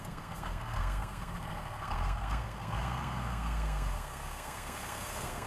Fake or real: fake